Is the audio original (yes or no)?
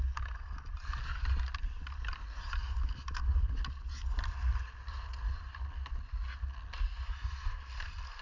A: yes